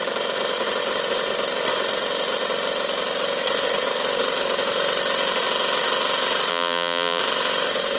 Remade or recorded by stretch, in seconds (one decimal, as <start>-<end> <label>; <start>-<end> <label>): 0.0-6.5 recorded; 6.5-7.2 remade; 7.2-8.0 recorded